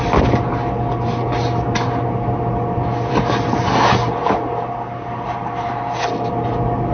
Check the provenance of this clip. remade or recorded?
recorded